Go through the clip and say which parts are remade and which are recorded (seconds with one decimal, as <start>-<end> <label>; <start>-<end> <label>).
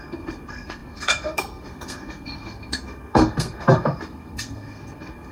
0.0-5.3 remade